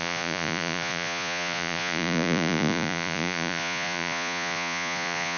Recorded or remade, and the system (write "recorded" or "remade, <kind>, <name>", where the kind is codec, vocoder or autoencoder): remade, vocoder, Vocos